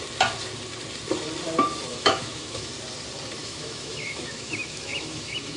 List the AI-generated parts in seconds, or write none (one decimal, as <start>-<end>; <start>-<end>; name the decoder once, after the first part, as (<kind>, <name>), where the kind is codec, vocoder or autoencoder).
1.9-2.7 (autoencoder, DAC-VAE); 3.4-5.6